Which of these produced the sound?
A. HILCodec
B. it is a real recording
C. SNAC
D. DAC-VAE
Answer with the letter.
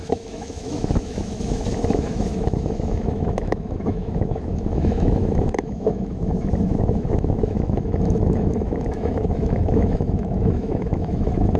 D